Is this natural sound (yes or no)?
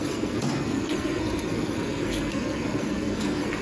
no